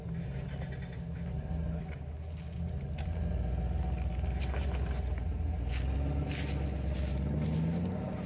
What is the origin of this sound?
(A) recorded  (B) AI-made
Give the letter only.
A